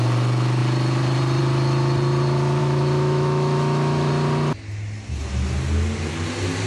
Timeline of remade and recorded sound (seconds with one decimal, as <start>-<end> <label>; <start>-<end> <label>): 0.0-2.6 recorded; 2.6-4.1 remade; 4.1-6.7 recorded